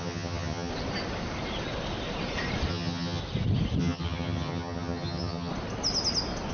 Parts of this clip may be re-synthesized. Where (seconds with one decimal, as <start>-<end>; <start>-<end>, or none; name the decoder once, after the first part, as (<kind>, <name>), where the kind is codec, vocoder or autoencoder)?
0.0-0.7 (vocoder, HiFi-GAN); 2.7-3.2; 3.8-5.5